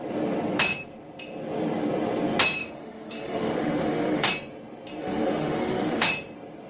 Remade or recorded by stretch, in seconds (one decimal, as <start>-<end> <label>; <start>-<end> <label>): 0.0-2.6 recorded; 2.6-4.3 remade; 4.3-5.0 recorded; 5.0-6.1 remade; 6.1-6.7 recorded